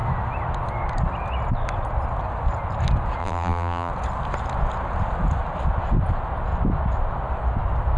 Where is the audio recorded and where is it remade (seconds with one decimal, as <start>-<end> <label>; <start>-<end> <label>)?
0.0-3.2 recorded; 3.2-3.9 remade; 3.9-8.0 recorded